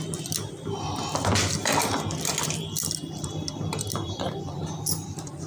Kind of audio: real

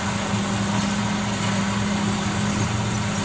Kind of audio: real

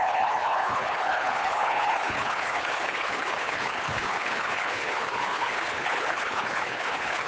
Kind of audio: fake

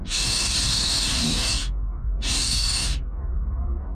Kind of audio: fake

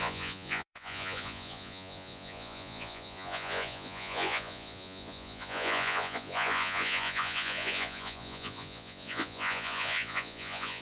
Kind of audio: fake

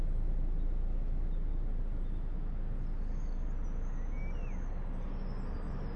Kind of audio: real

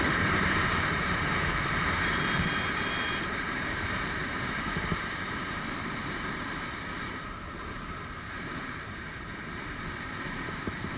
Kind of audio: fake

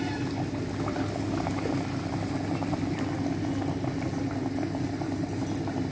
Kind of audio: real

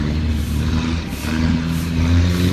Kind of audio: fake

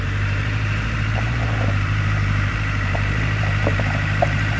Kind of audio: fake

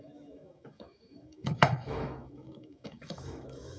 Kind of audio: fake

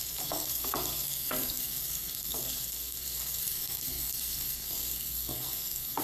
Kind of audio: fake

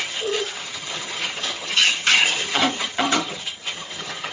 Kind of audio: fake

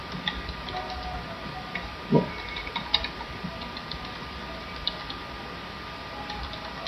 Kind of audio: real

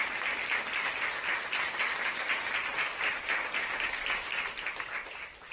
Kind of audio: fake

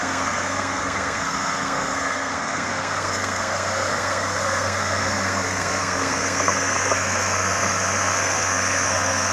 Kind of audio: fake